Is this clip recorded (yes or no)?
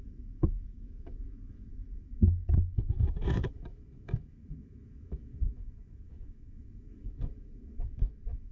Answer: no